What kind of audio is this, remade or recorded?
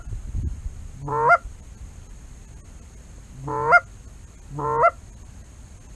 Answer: recorded